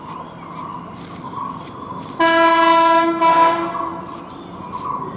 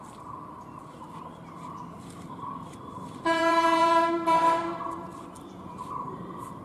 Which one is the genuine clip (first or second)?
first